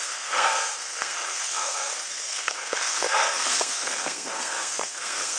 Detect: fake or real fake